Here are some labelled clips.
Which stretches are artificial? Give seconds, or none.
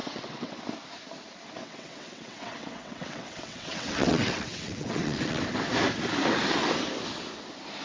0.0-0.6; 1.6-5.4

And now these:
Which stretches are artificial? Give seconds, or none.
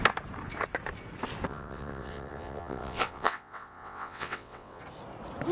1.5-4.8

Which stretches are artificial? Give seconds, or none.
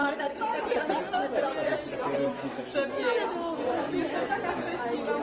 0.0-1.0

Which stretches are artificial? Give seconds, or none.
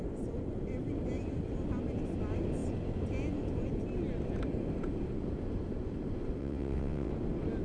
6.4-7.1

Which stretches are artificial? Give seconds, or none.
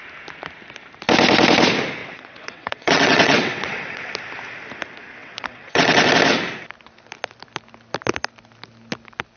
2.0-4.1; 5.2-6.1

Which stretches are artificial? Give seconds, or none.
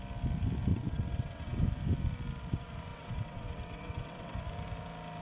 0.7-1.6; 2.9-4.4